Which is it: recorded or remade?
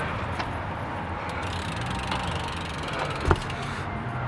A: recorded